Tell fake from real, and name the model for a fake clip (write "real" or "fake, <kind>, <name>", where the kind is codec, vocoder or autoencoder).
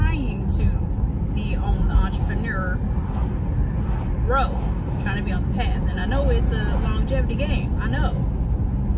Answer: real